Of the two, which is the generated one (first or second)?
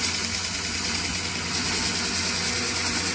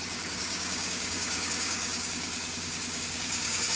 second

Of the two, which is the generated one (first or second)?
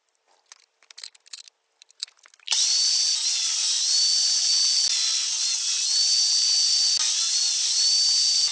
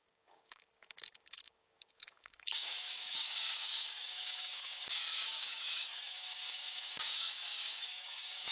second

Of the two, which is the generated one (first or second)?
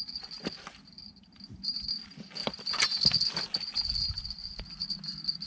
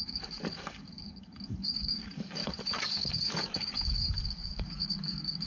second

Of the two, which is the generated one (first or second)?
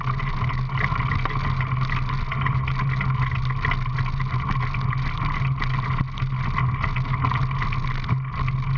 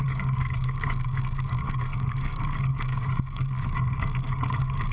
second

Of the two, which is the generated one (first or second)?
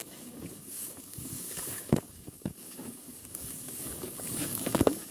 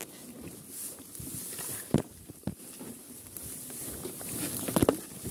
first